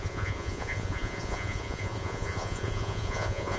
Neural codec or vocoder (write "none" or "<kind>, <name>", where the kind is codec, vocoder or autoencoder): vocoder, Vocos